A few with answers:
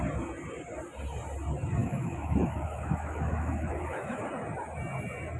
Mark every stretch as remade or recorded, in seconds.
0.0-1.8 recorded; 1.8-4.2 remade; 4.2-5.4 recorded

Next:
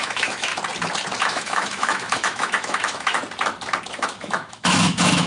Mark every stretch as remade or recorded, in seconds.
0.0-0.5 remade; 0.5-1.2 recorded; 1.2-3.2 remade; 3.2-3.9 recorded; 3.9-5.3 remade

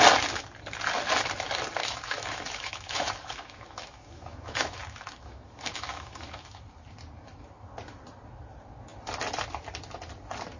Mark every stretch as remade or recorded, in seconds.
0.0-1.8 recorded; 1.8-6.6 remade; 6.6-10.6 recorded